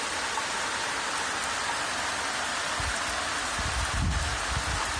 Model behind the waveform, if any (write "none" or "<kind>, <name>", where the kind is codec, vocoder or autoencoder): none